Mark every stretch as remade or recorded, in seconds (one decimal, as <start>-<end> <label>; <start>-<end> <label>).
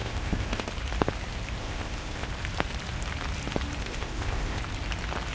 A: 0.0-0.7 remade; 0.7-1.6 recorded; 1.6-2.3 remade; 2.3-3.8 recorded; 3.8-4.6 remade; 4.6-5.3 recorded